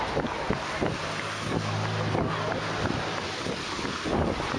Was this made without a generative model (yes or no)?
yes